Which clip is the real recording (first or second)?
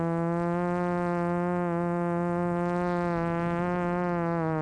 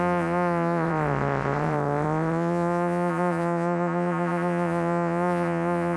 first